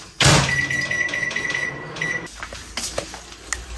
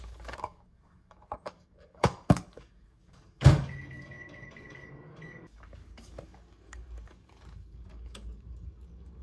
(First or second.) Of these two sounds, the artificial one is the second